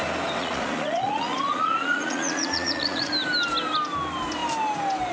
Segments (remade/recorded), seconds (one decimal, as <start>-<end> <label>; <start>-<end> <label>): 0.0-0.4 recorded; 0.4-3.1 remade; 3.1-5.1 recorded